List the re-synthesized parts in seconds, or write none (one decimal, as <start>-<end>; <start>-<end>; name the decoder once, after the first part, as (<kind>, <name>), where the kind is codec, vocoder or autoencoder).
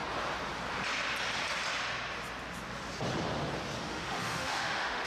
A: 3.8-5.1 (autoencoder, DAC-VAE)